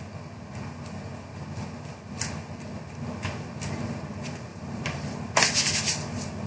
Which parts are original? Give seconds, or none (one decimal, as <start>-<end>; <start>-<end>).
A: 0.0-4.5; 5.2-6.5